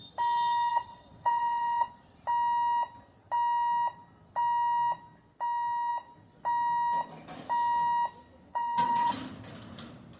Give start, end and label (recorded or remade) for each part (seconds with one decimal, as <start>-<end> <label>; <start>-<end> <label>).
0.0-0.7 recorded; 0.7-1.9 remade; 1.9-8.5 recorded; 8.5-9.1 remade; 9.1-10.2 recorded